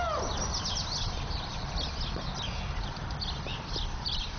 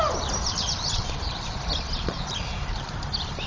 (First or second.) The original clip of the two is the first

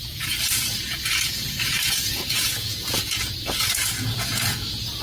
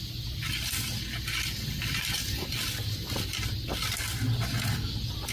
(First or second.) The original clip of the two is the second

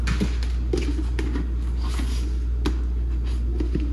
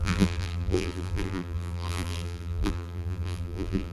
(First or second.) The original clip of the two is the first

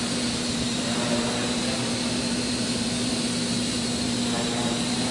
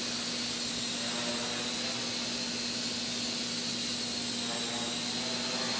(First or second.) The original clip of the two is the second